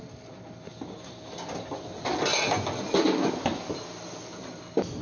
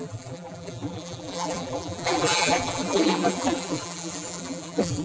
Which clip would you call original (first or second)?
first